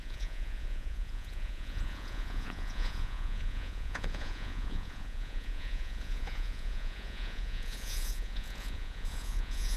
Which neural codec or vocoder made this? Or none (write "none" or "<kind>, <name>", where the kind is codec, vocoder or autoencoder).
vocoder, Vocos